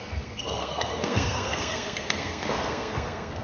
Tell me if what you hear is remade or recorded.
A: remade